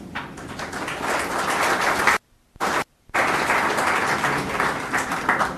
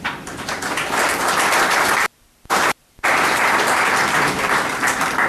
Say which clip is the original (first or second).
first